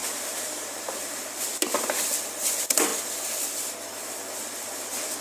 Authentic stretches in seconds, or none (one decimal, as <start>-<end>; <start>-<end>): 2.1-5.2